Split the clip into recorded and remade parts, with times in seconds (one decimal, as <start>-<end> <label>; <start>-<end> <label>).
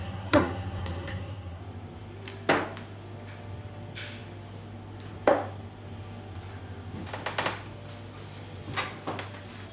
0.0-1.6 remade; 1.6-9.7 recorded